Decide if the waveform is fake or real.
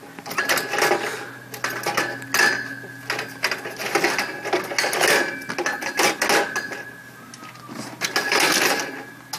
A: real